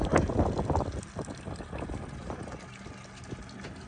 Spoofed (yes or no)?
no